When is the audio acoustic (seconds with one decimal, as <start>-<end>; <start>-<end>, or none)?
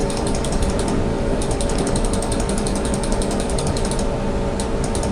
0.7-1.1; 3.9-5.1